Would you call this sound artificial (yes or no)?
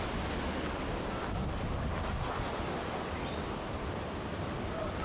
no